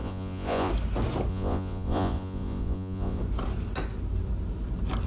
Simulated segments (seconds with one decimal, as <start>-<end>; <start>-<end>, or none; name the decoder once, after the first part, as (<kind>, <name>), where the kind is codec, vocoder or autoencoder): 0.0-0.7 (vocoder, Vocos); 1.3-3.2